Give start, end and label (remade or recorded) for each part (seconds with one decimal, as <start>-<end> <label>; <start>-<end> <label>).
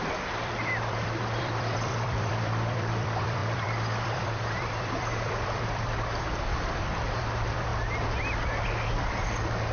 0.0-7.7 remade; 7.7-8.9 recorded; 8.9-9.7 remade